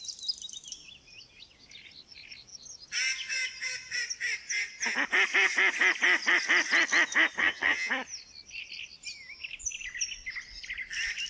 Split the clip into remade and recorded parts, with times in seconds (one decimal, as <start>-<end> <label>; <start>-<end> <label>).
0.0-7.4 recorded; 7.4-7.9 remade; 7.9-11.3 recorded